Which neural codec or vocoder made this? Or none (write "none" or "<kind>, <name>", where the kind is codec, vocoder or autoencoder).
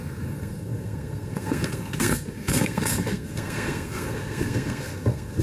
codec, SNAC